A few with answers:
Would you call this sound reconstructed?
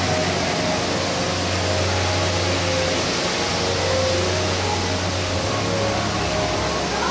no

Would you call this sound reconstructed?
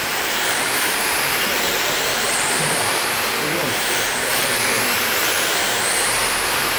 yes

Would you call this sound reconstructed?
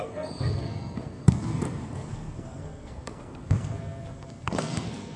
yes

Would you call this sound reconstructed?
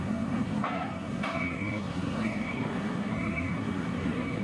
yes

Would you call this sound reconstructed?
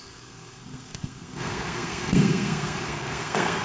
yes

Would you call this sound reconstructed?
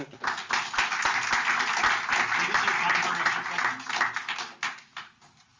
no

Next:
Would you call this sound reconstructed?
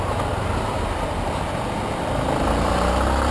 no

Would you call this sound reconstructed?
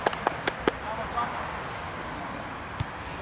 no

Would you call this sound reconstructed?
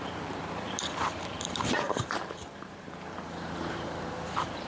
yes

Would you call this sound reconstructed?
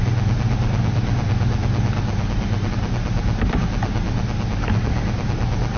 no